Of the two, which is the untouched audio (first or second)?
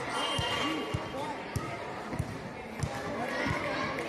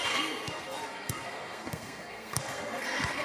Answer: first